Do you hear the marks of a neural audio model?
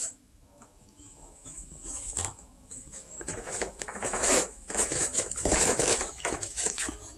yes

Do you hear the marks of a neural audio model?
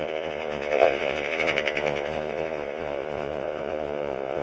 yes